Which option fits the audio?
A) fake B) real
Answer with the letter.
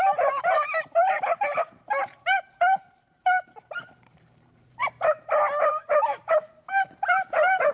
A